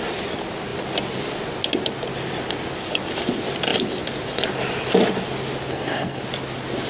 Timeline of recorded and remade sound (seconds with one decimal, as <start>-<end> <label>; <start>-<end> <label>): 0.0-5.7 recorded; 5.7-6.2 remade; 6.2-6.9 recorded